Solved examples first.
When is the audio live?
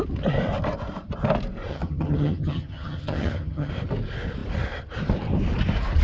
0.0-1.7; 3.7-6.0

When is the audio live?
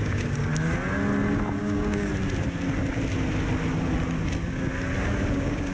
0.5-1.6; 2.1-5.3